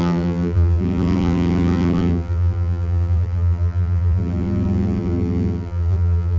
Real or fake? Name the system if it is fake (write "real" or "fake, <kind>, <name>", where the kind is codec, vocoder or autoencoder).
fake, vocoder, BigVGAN v2